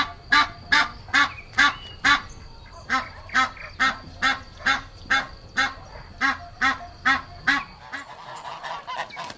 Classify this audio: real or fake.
real